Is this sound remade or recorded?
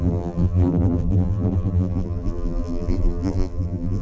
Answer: remade